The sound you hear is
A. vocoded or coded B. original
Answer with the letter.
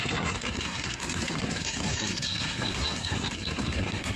A